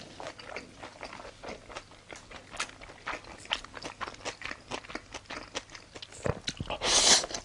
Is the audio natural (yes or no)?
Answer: yes